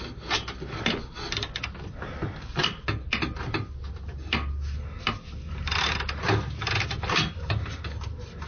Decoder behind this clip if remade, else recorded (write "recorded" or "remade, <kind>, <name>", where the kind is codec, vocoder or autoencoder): recorded